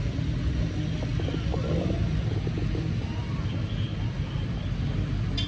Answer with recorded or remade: recorded